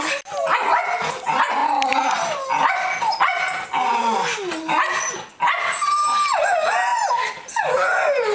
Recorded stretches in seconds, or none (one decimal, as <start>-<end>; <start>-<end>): 0.0-8.3